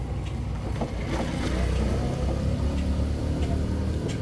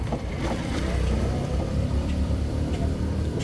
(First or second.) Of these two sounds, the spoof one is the second